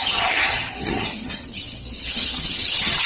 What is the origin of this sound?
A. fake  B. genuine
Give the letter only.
A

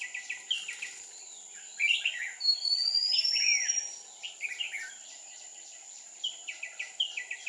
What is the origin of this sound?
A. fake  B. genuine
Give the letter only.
B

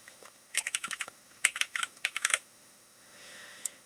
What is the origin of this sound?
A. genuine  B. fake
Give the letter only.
B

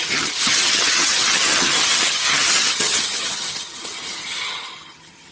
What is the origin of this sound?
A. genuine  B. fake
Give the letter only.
B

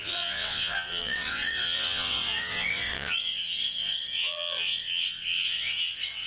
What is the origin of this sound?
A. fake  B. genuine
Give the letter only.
A